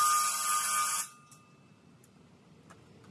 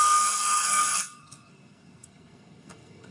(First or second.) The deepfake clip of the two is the second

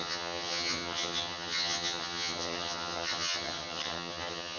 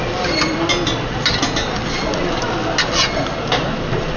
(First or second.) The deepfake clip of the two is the first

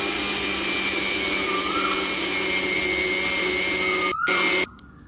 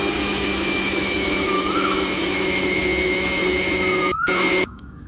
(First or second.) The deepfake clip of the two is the second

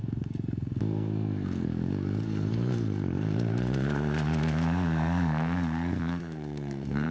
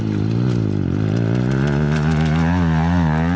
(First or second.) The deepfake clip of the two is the first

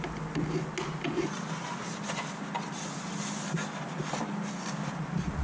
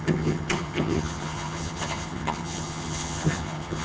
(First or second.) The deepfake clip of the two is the second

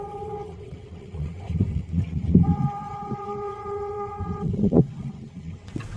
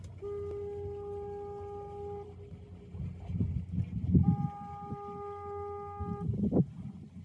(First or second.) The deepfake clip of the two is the first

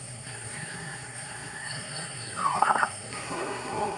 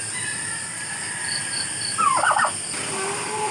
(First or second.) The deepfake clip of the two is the first